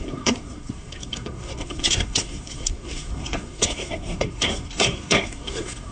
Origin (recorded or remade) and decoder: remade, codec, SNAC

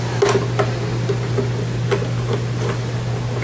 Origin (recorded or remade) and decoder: recorded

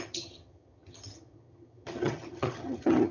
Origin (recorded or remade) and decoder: remade, vocoder, HiFi-GAN